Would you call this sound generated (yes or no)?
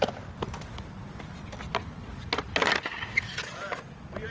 no